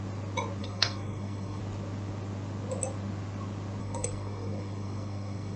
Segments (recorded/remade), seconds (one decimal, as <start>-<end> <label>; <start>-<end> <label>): 0.0-0.6 recorded; 0.6-1.6 remade; 1.6-3.8 recorded; 3.8-5.6 remade

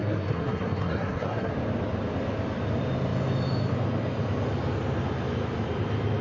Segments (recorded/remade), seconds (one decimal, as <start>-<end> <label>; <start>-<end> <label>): 0.0-1.5 remade; 1.5-6.2 recorded

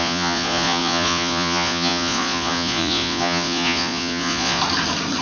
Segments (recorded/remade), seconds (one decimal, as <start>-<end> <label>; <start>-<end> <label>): 0.0-4.6 remade; 4.6-5.2 recorded

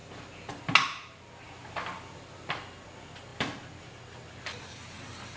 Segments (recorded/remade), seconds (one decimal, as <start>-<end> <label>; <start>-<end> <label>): 0.0-5.4 recorded